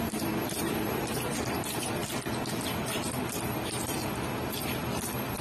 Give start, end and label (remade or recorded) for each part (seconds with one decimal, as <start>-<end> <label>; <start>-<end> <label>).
0.0-2.0 remade; 2.0-2.7 recorded; 2.7-5.4 remade